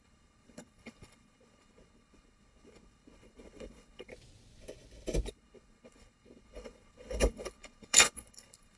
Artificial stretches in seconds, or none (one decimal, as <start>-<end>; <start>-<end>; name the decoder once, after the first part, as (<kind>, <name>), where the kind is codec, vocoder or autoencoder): 0.0-4.1 (codec, HILCodec); 5.3-8.8

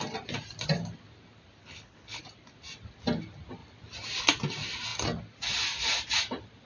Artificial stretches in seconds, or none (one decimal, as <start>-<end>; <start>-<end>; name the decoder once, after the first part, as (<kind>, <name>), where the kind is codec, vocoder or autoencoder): 1.6-2.2 (codec, HILCodec)